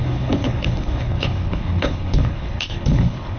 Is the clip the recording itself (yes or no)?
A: no